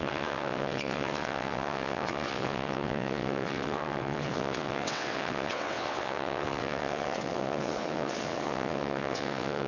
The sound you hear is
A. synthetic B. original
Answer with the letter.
A